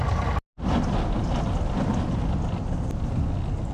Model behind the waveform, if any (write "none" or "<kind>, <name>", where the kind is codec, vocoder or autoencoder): none